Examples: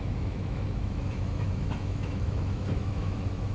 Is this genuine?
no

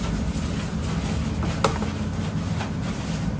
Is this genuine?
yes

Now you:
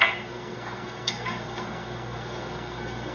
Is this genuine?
no